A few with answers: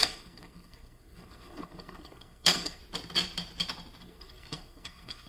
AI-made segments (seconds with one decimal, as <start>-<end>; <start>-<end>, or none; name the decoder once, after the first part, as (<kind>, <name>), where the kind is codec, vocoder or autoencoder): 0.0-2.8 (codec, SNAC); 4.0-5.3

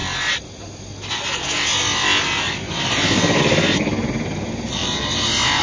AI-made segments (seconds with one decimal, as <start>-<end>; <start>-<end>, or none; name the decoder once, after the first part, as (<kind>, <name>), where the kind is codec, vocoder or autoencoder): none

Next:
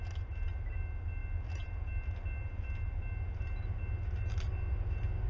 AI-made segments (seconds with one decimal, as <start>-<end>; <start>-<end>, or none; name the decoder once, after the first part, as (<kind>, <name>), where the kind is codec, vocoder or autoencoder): none

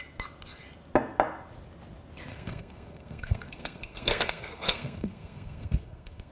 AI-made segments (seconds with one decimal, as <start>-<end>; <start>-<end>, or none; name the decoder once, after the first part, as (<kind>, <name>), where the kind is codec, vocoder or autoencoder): 2.3-6.3 (codec, SNAC)

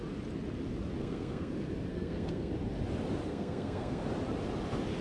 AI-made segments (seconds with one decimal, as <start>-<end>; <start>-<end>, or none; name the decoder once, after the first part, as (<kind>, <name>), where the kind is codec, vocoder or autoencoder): 1.0-1.5 (codec, SNAC); 1.9-2.5; 3.3-4.0

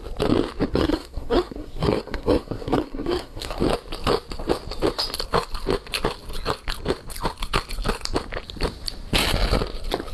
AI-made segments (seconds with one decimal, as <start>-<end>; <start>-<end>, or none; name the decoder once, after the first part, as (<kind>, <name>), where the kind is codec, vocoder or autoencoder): 0.7-3.6 (codec, SNAC)

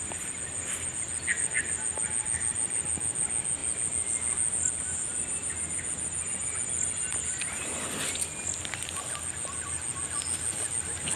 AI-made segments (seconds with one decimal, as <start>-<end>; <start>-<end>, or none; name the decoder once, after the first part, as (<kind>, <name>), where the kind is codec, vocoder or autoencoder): none